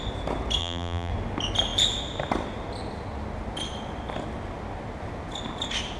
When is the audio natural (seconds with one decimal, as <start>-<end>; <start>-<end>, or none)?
0.0-0.6; 1.1-6.0